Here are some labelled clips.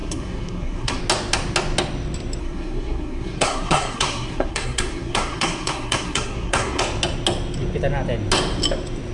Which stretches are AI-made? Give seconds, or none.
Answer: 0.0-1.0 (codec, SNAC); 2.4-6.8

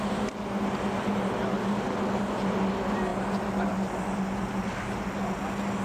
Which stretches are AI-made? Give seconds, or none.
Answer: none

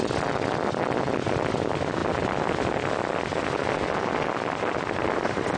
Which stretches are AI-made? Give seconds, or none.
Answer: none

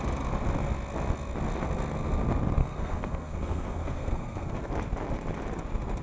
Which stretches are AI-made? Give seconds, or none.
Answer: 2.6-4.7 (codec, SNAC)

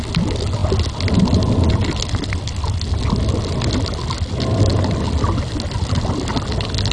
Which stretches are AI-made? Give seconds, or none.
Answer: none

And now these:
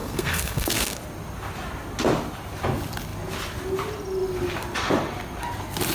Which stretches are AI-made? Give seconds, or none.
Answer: 0.0-1.0 (codec, SNAC)